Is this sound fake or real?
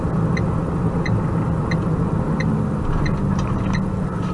real